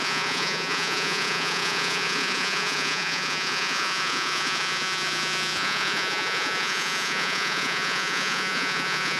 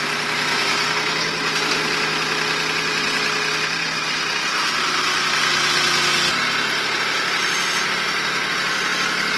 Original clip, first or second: second